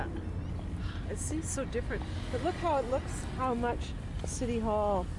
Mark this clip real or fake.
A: real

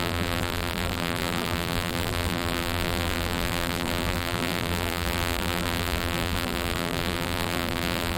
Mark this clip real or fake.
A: fake